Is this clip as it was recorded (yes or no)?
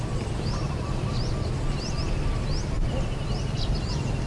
yes